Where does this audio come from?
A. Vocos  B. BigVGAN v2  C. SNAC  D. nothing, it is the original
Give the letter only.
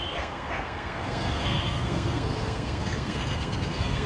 C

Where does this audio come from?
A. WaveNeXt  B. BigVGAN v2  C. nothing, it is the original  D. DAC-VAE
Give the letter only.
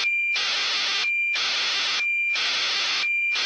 C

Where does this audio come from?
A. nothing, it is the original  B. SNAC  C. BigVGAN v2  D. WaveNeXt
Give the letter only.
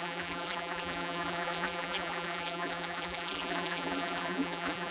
C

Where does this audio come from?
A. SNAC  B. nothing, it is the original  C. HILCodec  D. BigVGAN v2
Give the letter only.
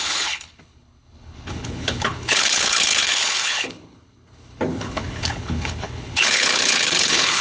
C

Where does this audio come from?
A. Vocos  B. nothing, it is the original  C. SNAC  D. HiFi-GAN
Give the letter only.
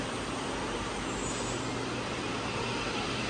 B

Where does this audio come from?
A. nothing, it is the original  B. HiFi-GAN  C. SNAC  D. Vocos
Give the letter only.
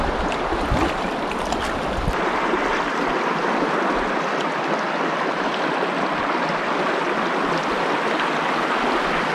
A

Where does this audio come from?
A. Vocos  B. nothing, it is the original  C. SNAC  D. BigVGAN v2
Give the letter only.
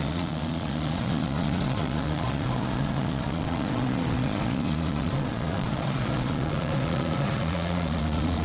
A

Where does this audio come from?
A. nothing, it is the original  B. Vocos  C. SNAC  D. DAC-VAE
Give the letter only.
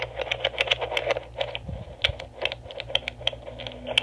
A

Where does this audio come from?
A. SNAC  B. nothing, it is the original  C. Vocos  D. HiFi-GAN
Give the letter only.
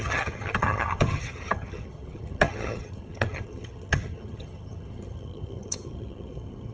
D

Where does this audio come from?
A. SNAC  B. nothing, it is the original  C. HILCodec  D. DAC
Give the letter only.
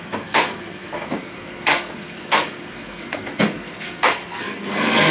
A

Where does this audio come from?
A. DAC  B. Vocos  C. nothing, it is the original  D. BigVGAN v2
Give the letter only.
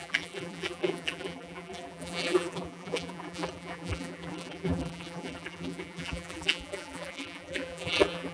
D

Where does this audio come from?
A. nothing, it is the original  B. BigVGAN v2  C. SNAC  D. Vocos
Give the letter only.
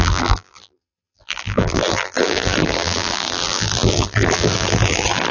B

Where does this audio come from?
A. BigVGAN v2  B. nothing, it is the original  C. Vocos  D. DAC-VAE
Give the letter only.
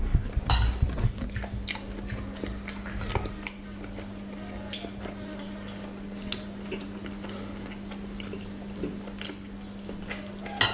B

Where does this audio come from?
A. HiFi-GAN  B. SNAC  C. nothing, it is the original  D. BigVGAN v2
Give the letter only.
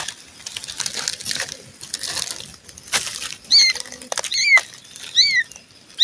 C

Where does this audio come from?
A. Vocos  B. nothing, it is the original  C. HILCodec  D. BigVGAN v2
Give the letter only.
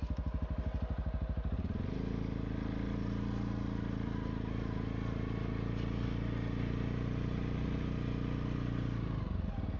B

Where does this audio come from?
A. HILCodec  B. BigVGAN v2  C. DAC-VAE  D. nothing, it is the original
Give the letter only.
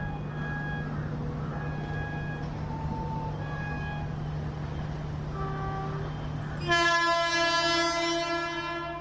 D